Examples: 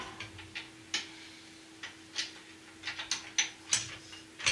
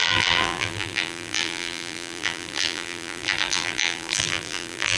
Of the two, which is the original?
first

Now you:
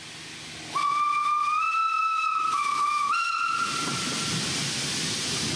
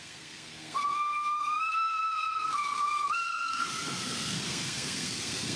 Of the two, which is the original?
first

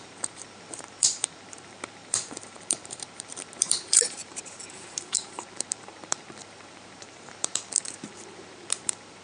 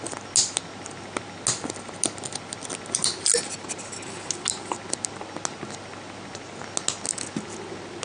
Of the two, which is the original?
second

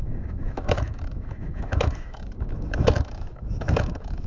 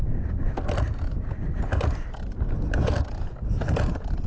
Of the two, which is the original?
second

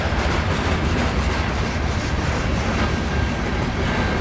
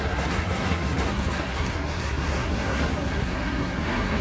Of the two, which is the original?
first